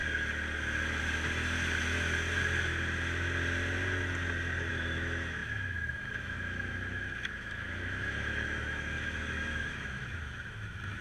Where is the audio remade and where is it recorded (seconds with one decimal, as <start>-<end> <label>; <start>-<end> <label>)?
0.0-4.7 recorded; 4.7-11.0 remade